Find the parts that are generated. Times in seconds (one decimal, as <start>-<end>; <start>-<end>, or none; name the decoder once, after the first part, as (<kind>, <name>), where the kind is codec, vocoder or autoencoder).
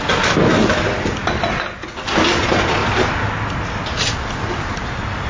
none